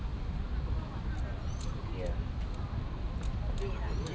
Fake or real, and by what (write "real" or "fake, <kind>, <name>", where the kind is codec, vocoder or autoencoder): real